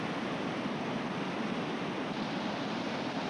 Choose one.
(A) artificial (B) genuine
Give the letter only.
B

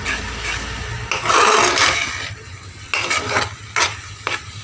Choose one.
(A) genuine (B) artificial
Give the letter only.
A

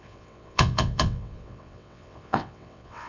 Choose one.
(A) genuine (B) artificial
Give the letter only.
B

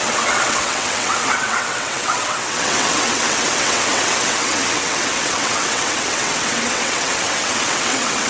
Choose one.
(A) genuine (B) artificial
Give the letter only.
B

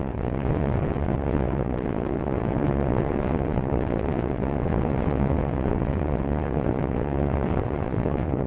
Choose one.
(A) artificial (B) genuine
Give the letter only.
A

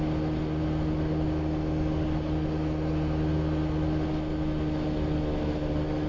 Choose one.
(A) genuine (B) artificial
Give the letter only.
A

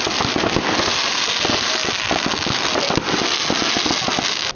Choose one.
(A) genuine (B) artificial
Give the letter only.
A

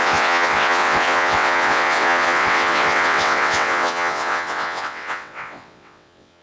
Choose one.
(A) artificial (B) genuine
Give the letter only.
A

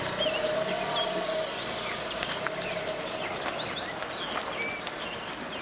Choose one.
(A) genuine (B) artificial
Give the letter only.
A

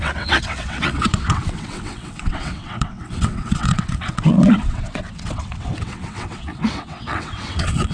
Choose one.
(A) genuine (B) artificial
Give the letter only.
B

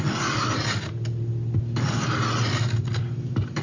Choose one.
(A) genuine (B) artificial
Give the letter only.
A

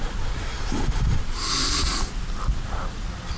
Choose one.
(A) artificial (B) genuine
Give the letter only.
B